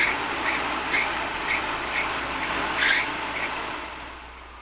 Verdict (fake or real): real